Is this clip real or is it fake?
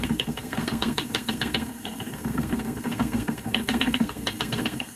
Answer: fake